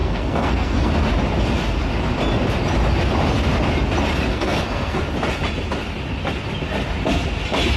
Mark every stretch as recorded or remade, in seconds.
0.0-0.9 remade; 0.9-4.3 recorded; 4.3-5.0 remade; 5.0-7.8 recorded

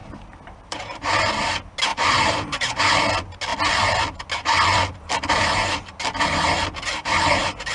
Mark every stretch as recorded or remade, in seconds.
0.0-1.3 remade; 1.3-1.9 recorded; 1.9-2.8 remade; 2.8-7.7 recorded

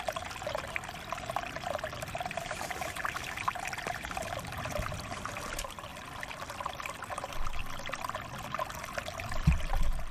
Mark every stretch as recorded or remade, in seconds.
0.0-5.9 remade; 5.9-6.7 recorded; 6.7-7.6 remade; 7.6-8.8 recorded; 8.8-10.1 remade

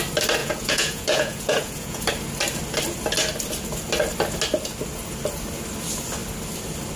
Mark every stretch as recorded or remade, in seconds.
0.0-0.4 recorded; 0.4-2.0 remade; 2.0-7.0 recorded